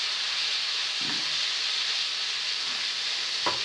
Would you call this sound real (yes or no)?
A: yes